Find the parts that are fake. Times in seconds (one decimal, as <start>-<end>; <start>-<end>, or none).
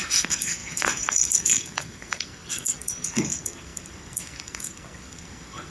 0.0-5.7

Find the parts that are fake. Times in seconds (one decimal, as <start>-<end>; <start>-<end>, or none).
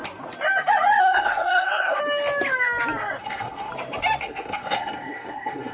1.0-2.0; 3.2-3.7; 4.2-5.7